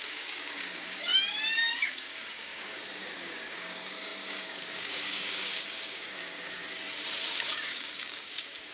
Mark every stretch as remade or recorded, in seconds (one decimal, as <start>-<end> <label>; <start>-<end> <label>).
0.0-1.1 remade; 1.1-1.7 recorded; 1.7-6.6 remade; 6.6-7.3 recorded; 7.3-8.7 remade